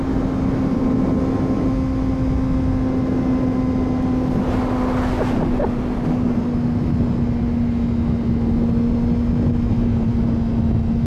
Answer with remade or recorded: recorded